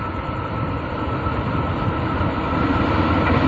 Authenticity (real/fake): real